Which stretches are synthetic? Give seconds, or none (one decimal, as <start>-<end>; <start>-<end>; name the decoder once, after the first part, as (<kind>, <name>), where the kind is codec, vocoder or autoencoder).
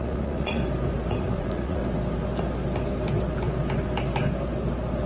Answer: 0.0-0.6 (vocoder, Vocos); 1.2-1.8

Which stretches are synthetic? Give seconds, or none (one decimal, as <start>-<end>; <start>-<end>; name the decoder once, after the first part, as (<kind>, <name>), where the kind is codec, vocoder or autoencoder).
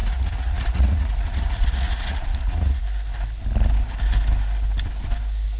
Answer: 0.0-2.8 (vocoder, Vocos)